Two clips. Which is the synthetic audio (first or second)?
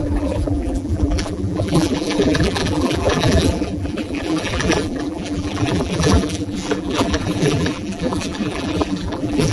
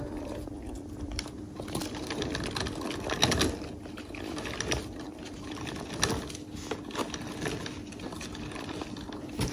first